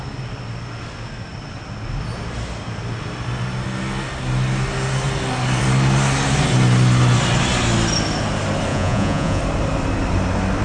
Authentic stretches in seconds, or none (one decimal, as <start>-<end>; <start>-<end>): 0.0-8.7; 9.4-10.6